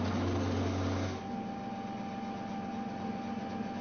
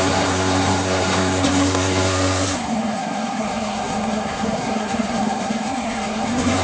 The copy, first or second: second